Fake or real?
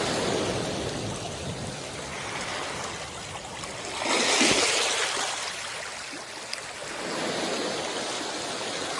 real